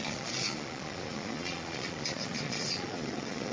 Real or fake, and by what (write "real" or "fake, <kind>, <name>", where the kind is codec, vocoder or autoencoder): fake, vocoder, Vocos